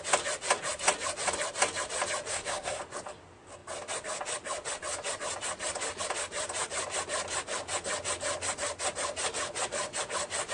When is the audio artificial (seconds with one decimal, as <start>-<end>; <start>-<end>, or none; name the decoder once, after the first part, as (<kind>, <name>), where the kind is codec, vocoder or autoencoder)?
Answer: 2.3-2.8 (codec, SNAC)

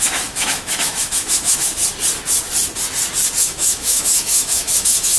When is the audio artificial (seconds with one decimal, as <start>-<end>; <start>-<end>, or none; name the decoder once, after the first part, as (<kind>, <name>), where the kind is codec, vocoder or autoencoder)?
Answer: 0.0-1.8 (autoencoder, DAC-VAE); 3.4-5.2

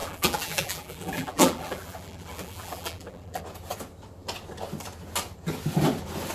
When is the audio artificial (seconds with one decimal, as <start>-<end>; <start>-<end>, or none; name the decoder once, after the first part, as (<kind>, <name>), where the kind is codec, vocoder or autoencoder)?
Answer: 0.0-3.4 (vocoder, BigVGAN v2)